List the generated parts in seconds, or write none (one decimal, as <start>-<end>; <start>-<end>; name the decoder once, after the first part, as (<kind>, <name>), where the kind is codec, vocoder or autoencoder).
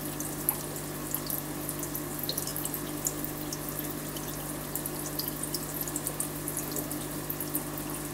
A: none